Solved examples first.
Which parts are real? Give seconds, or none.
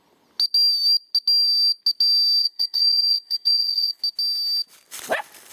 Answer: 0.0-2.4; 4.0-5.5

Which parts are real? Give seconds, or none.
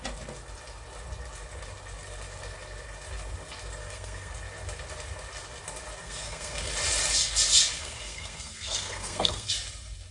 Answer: 0.0-3.8; 4.3-6.0; 6.7-7.8; 9.5-10.1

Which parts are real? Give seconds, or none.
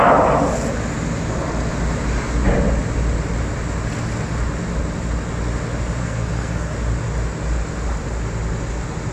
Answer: 0.0-6.0; 6.7-9.1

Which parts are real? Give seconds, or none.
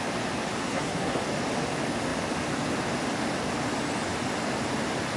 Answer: 0.0-0.6; 1.2-5.2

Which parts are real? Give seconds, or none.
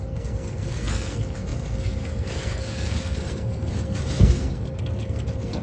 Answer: none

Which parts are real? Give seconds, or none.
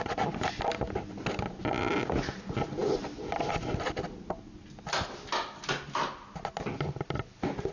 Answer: 0.0-7.7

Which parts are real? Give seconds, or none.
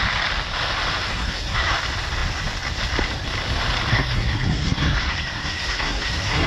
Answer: 0.0-1.1; 1.7-3.9